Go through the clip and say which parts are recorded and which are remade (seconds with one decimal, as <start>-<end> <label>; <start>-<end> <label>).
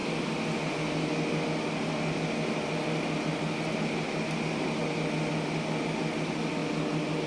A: 0.0-7.3 recorded